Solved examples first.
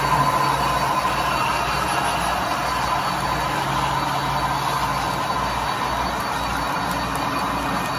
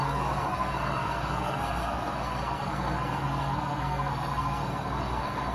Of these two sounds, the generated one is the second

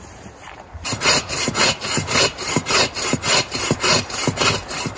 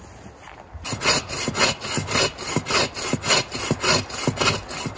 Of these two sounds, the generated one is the first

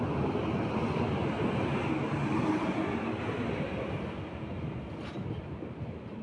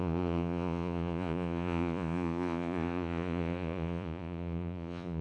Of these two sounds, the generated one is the second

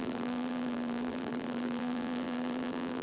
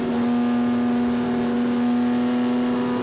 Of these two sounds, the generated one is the first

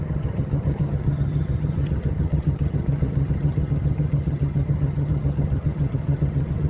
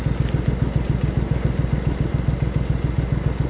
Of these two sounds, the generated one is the first